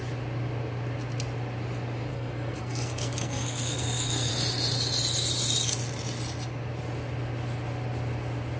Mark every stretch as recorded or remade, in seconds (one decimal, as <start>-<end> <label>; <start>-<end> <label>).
0.0-2.1 recorded; 2.1-4.3 remade; 4.3-8.6 recorded